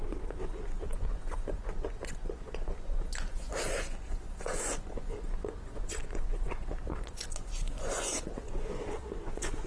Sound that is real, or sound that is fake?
fake